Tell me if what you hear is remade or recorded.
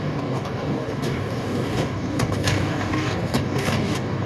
remade